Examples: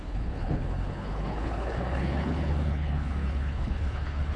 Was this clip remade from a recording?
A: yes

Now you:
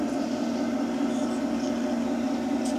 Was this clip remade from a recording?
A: no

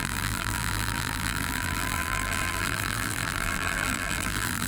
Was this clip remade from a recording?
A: yes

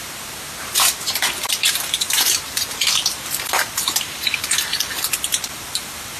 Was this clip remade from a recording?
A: yes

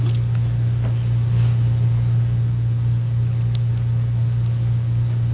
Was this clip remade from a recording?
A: no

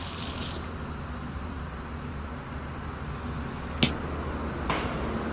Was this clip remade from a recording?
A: no